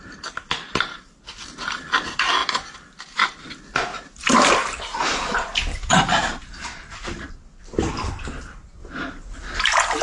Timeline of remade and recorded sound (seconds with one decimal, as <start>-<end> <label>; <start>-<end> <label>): 0.0-3.9 recorded; 3.9-7.3 remade; 7.3-10.0 recorded